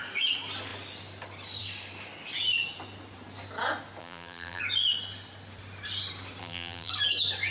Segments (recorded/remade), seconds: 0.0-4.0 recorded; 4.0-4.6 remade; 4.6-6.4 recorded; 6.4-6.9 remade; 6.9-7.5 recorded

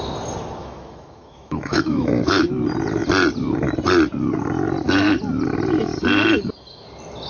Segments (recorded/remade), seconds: 0.0-0.6 recorded; 0.6-2.5 remade; 2.5-7.3 recorded

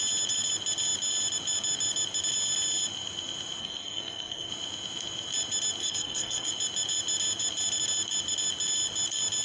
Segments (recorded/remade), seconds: 0.0-3.6 recorded; 3.6-4.5 remade; 4.5-5.8 recorded; 5.8-6.5 remade; 6.5-9.4 recorded

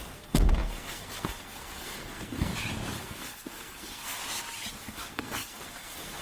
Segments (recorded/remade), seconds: 0.0-2.5 remade; 2.5-3.0 recorded; 3.0-4.2 remade; 4.2-4.8 recorded; 4.8-6.2 remade

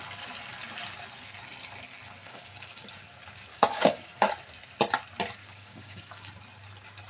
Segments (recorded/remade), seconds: 0.0-2.2 recorded; 2.2-2.8 remade; 2.8-3.5 recorded; 3.5-4.3 remade; 4.3-5.4 recorded; 5.4-6.3 remade; 6.3-7.1 recorded